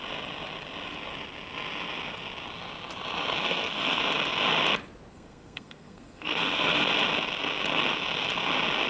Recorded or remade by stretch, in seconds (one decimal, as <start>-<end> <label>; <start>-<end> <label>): 0.0-3.4 recorded; 3.4-4.0 remade; 4.0-5.1 recorded; 5.1-6.9 remade; 6.9-8.9 recorded